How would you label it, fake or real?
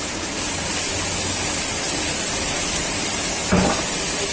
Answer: real